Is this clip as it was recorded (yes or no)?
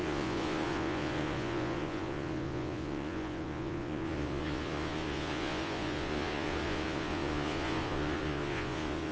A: no